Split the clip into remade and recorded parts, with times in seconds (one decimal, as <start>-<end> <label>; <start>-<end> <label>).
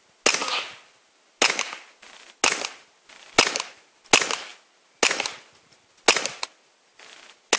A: 0.0-7.6 recorded